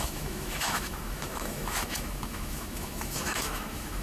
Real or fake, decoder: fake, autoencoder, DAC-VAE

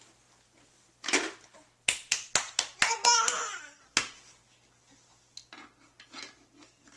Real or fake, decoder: real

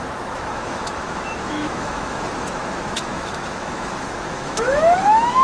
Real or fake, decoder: fake, autoencoder, DAC-VAE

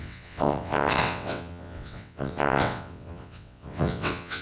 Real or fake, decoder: fake, vocoder, WaveNeXt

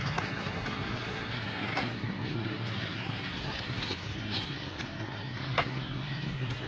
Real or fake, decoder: fake, codec, SNAC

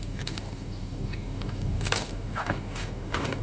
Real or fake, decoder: fake, codec, DAC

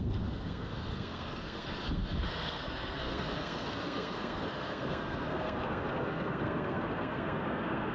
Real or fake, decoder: fake, codec, SNAC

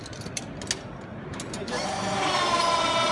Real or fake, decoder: real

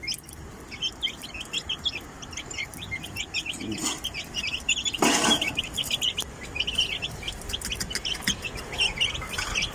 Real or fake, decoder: real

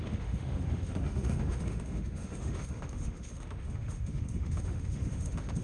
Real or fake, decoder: fake, autoencoder, DAC-VAE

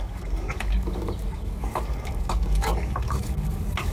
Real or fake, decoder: fake, codec, DAC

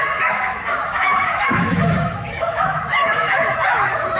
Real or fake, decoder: fake, autoencoder, DAC-VAE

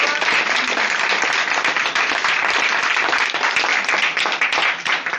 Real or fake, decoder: fake, vocoder, BigVGAN v2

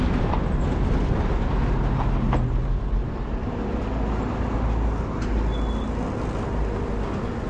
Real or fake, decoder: real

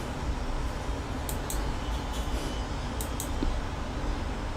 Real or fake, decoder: real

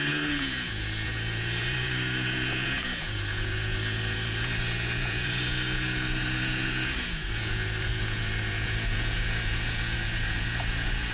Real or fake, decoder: fake, vocoder, Vocos